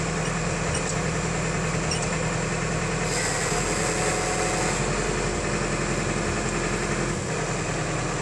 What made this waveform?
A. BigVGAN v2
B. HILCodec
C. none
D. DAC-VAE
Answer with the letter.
C